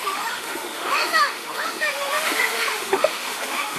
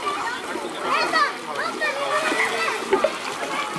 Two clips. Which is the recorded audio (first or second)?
second